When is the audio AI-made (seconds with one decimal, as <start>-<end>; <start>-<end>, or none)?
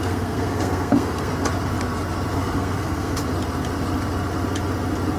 0.0-1.3; 2.3-3.2